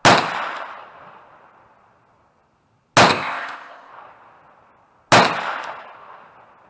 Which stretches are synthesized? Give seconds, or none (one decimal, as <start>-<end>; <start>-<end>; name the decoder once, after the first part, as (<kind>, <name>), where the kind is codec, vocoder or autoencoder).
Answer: 3.1-3.9 (codec, ZipCodec)